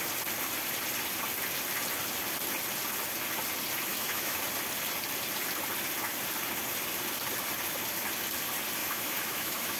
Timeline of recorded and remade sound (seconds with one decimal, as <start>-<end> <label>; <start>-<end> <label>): 0.0-3.9 recorded; 3.9-4.4 remade; 4.4-8.8 recorded; 8.8-9.8 remade